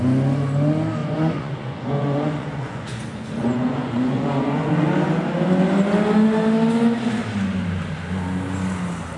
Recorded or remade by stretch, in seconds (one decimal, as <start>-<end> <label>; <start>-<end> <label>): 0.0-1.0 recorded; 1.0-4.7 remade; 4.7-9.2 recorded